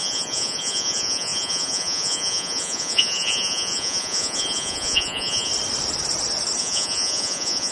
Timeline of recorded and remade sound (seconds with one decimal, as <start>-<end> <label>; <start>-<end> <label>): 0.0-5.5 remade; 5.5-6.6 recorded; 6.6-7.7 remade